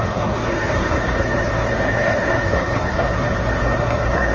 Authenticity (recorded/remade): remade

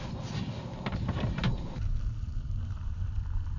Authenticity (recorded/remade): recorded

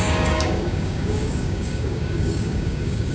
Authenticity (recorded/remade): remade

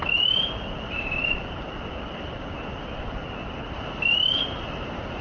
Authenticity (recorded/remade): recorded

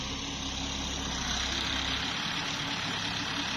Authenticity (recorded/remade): recorded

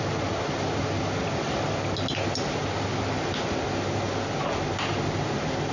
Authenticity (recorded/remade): recorded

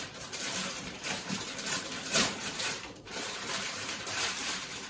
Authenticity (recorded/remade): remade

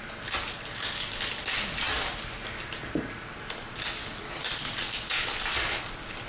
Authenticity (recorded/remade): recorded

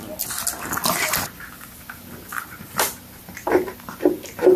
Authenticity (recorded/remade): recorded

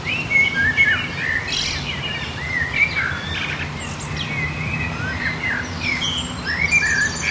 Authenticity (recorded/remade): recorded